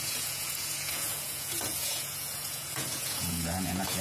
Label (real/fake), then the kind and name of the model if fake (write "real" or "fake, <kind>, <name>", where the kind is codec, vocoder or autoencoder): fake, vocoder, Vocos